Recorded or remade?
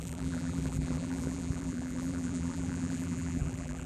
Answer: remade